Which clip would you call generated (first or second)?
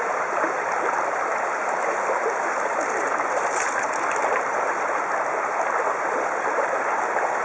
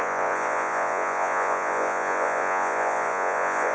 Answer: second